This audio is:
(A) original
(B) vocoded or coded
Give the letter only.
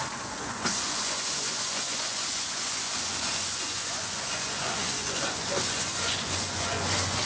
B